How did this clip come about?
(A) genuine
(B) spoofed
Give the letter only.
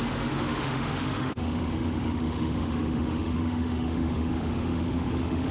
B